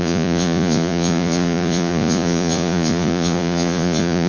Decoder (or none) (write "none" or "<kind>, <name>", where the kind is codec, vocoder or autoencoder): vocoder, Vocos